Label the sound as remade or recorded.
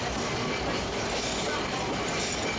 recorded